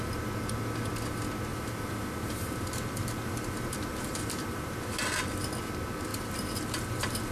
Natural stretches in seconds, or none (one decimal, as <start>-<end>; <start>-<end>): 0.0-1.5; 5.0-6.1